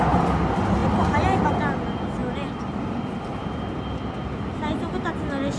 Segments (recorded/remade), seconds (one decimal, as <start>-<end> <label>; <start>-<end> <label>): 0.0-5.6 recorded

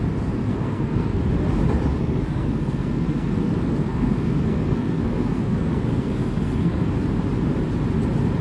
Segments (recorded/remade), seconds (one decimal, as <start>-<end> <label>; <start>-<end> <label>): 0.0-0.4 recorded; 0.4-1.2 remade; 1.2-2.0 recorded; 2.0-6.9 remade; 6.9-8.4 recorded

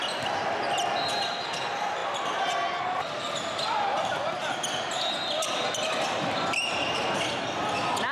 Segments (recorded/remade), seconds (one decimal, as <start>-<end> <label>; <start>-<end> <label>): 0.0-8.1 recorded

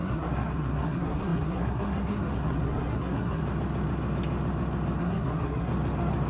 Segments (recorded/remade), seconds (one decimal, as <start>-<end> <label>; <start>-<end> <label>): 0.0-3.4 remade; 3.4-5.0 recorded; 5.0-5.7 remade; 5.7-6.3 recorded

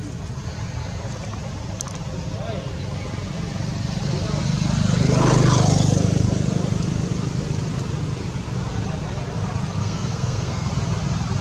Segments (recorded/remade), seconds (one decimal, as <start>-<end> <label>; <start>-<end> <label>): 0.0-9.8 recorded; 9.8-10.7 remade; 10.7-11.4 recorded

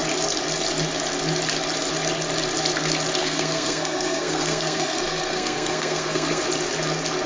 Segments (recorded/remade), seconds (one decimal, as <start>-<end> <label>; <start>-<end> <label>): 0.0-3.2 recorded; 3.2-6.5 remade; 6.5-7.3 recorded

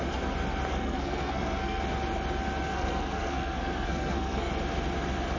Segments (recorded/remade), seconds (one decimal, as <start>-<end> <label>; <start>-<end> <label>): 0.0-0.7 recorded; 0.7-1.8 remade; 1.8-2.7 recorded; 2.7-4.5 remade; 4.5-5.4 recorded